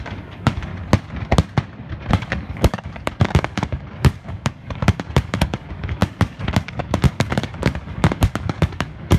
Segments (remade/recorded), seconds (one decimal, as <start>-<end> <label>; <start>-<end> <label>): 0.0-0.7 remade; 0.7-2.1 recorded; 2.1-9.2 remade